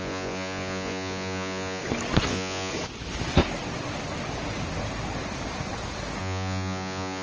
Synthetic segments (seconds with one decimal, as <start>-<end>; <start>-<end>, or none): 0.0-1.8; 2.3-2.7; 6.2-7.2